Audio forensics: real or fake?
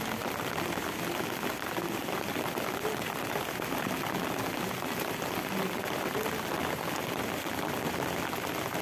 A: real